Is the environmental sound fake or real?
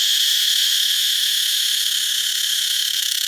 fake